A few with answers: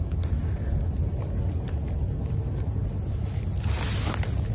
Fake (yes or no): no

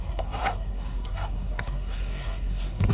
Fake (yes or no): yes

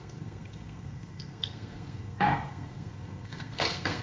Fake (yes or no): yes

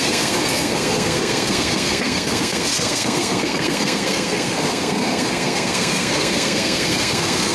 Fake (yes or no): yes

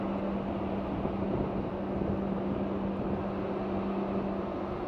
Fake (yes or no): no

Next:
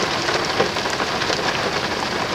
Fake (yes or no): no